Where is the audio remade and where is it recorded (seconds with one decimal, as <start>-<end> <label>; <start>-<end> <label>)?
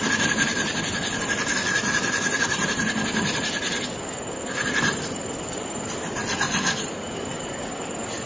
0.0-2.5 remade; 2.5-4.8 recorded; 4.8-7.3 remade; 7.3-8.3 recorded